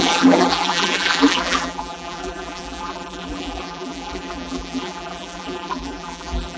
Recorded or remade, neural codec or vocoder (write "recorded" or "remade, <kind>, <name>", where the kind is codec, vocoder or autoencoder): remade, vocoder, BigVGAN v2